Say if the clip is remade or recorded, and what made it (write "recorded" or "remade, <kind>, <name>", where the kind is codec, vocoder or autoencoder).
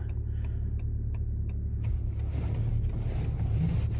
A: recorded